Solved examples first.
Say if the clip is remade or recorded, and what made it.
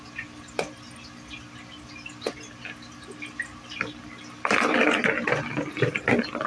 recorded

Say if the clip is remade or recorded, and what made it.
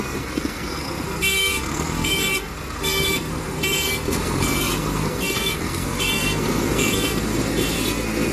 remade, codec, SNAC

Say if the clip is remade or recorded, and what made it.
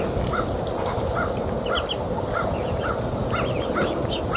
recorded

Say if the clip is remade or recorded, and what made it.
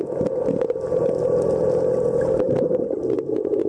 recorded